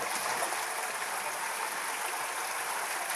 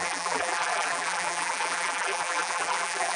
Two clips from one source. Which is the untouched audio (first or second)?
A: first